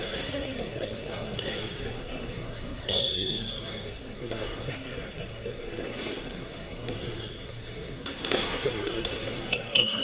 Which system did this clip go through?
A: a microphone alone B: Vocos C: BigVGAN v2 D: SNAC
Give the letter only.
D